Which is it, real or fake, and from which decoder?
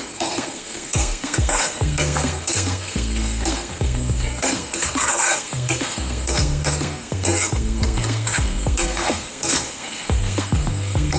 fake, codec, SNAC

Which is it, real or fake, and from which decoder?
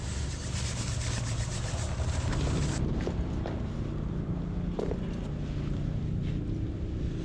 real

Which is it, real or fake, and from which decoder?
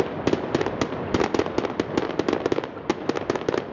real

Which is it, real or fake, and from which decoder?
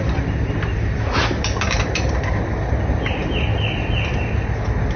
real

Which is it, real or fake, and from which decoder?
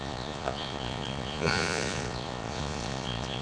fake, vocoder, Vocos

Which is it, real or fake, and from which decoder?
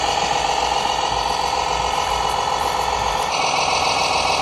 fake, vocoder, BigVGAN v2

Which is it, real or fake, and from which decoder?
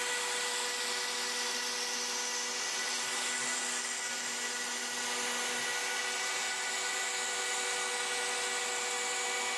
real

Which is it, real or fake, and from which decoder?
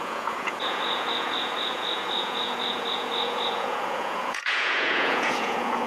fake, vocoder, Vocos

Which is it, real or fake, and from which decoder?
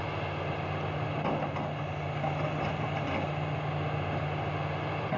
real